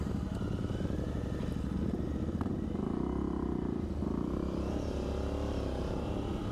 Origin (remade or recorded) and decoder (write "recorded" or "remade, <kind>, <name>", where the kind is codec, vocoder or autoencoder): recorded